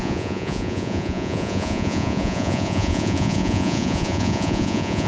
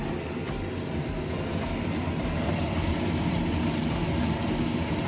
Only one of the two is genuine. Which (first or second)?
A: second